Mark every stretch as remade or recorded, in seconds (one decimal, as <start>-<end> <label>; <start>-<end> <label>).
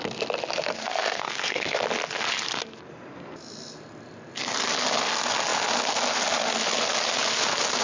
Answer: 0.0-0.7 recorded; 0.7-1.8 remade; 1.8-7.8 recorded